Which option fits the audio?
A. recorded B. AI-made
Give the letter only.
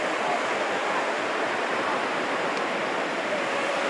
A